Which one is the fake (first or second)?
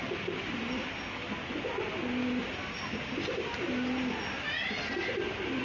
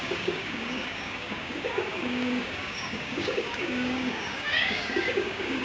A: second